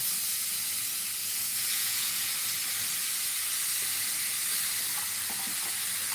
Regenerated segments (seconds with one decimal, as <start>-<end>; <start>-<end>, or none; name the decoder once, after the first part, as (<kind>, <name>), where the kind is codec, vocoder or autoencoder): 1.2-2.3 (vocoder, Vocos)